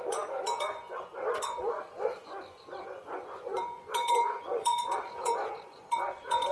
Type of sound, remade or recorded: remade